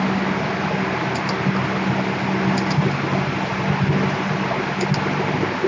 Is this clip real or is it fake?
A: real